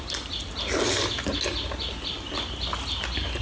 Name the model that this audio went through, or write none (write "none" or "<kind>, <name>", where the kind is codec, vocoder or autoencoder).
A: none